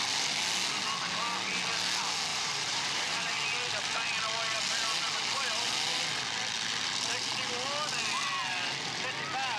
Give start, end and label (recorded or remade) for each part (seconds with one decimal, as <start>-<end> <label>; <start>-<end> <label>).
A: 0.0-2.3 recorded; 2.3-3.3 remade; 3.3-9.6 recorded